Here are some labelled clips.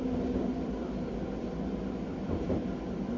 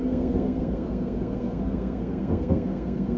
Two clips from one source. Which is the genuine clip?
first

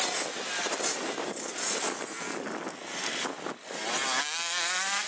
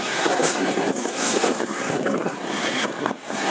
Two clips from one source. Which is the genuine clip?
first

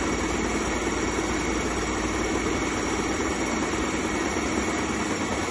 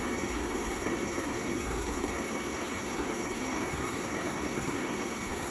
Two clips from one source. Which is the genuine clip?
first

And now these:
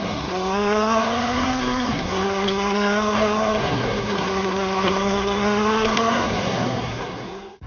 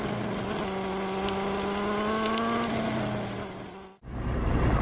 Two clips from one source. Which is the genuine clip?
second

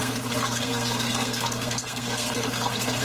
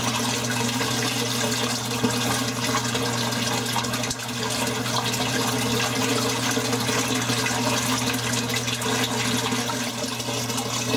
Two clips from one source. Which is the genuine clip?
second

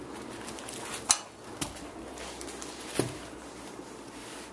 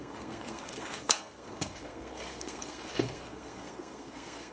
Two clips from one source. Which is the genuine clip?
first